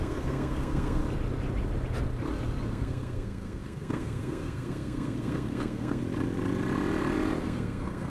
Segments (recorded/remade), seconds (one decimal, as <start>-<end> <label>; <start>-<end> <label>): 0.0-1.0 remade; 1.0-2.7 recorded; 2.7-6.0 remade; 6.0-7.4 recorded; 7.4-8.1 remade